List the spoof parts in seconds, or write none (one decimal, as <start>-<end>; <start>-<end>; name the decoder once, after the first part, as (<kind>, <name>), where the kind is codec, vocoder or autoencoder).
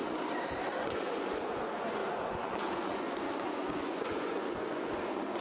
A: 0.8-5.4 (vocoder, Vocos)